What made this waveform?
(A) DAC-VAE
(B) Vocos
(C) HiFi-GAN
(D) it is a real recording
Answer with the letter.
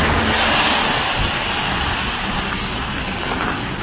D